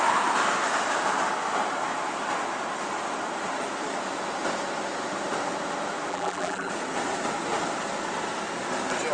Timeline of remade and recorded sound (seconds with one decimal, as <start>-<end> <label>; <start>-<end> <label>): 0.0-6.1 recorded; 6.1-6.7 remade; 6.7-9.1 recorded